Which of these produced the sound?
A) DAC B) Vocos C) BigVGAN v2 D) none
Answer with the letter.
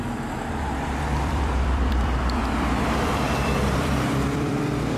C